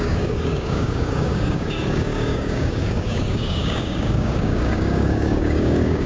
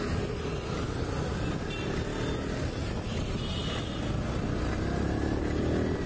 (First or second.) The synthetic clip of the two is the first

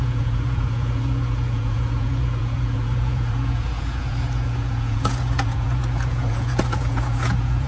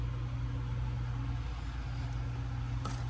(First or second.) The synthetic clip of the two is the first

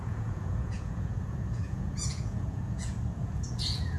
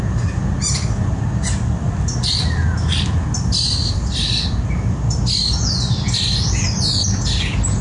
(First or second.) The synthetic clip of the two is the first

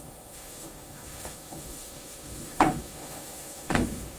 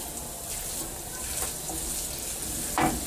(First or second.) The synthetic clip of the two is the first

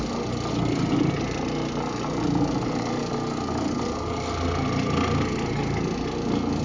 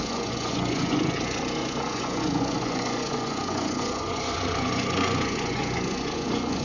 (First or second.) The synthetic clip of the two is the second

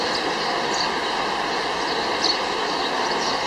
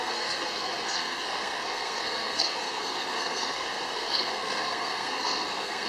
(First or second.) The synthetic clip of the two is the second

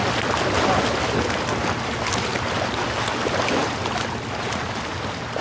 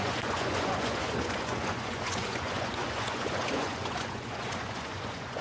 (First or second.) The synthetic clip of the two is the second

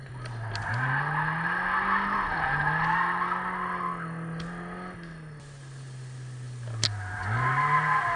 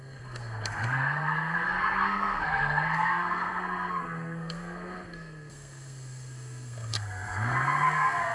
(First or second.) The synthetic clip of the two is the second